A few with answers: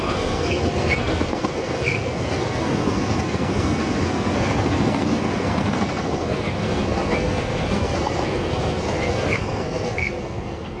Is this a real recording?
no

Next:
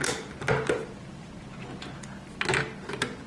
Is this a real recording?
yes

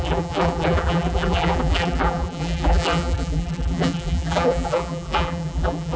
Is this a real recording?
no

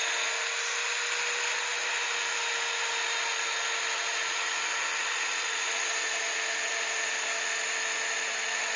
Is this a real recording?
yes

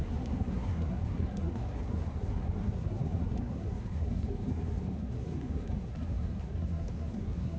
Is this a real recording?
no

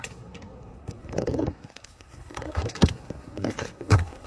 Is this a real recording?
no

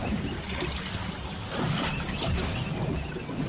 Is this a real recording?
yes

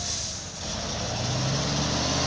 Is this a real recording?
yes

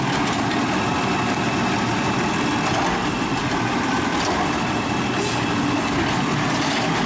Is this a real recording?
yes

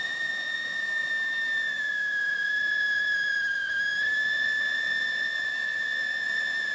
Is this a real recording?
no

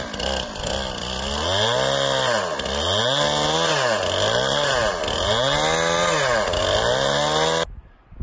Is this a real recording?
yes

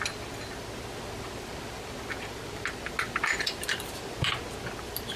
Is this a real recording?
yes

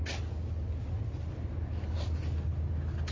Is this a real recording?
yes